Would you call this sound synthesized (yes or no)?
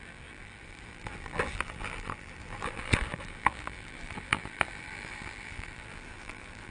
yes